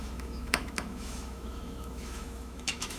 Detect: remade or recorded remade